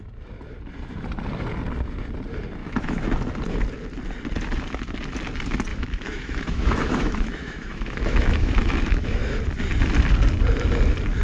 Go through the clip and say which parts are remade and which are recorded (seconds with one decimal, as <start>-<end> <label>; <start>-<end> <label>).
0.0-2.6 recorded; 2.6-3.1 remade; 3.1-5.7 recorded; 5.7-9.4 remade; 9.4-11.2 recorded